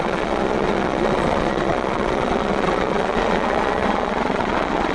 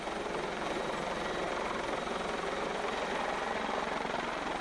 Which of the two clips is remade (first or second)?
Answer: first